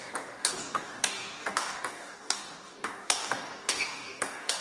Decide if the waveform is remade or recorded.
remade